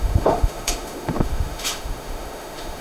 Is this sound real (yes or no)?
no